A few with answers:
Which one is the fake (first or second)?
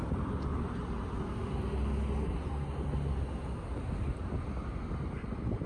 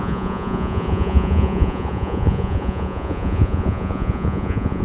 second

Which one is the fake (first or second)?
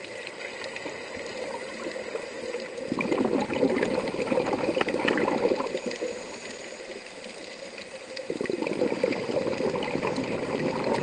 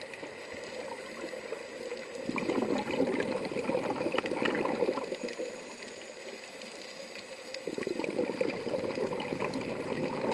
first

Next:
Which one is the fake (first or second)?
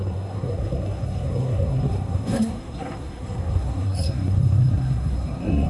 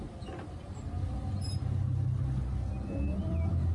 first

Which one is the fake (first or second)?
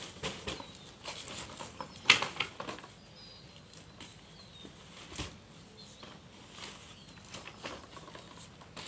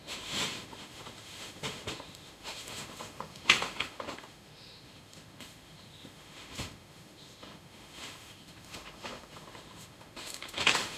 second